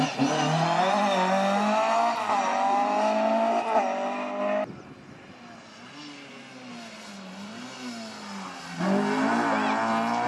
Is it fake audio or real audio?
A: real